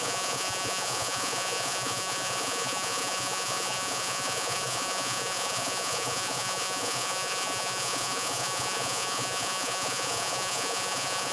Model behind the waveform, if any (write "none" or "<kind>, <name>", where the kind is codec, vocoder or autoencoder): vocoder, Vocos